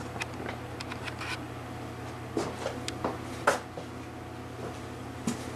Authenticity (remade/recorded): recorded